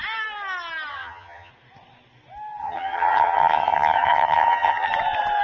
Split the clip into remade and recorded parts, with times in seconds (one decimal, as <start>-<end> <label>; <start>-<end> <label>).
0.0-0.9 recorded; 0.9-1.5 remade; 1.5-2.6 recorded; 2.6-4.9 remade; 4.9-5.4 recorded